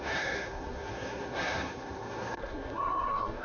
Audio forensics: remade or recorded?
remade